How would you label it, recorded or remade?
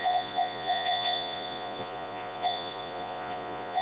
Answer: remade